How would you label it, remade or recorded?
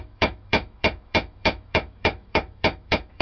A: remade